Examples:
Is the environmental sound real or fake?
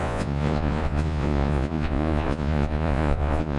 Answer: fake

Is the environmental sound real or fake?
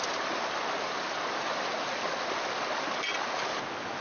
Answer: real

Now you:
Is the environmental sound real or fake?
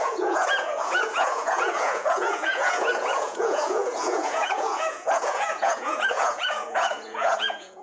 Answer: fake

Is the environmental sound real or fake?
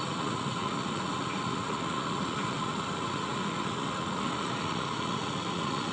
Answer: fake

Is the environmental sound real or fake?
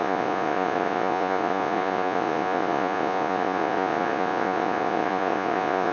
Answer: fake